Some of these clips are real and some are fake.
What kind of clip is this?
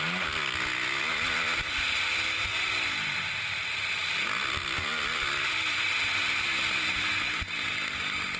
real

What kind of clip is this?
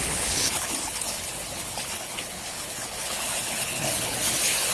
fake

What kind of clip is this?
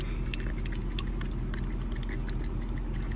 real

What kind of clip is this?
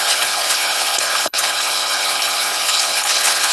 fake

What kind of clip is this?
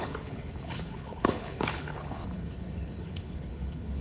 fake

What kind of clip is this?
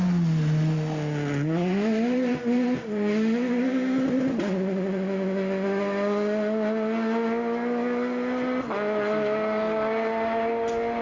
real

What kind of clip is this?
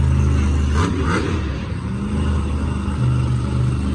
real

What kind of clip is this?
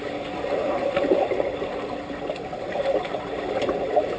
real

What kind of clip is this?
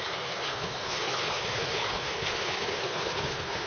fake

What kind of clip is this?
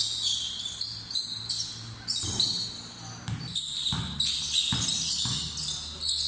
real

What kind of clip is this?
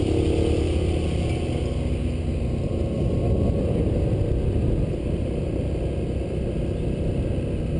real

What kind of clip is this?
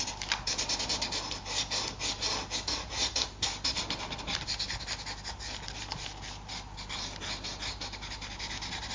real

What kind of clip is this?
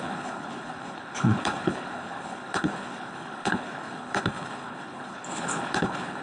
fake